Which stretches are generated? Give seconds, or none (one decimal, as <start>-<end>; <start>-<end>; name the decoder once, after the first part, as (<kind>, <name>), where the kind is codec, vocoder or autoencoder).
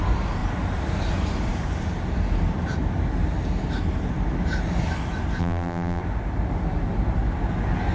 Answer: 5.4-6.0 (vocoder, BigVGAN v2)